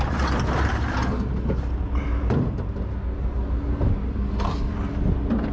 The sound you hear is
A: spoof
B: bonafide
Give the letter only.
B